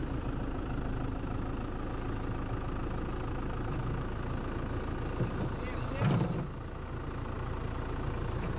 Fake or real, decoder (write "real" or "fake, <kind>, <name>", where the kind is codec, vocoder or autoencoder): real